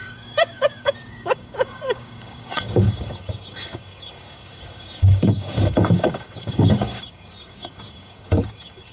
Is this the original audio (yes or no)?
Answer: no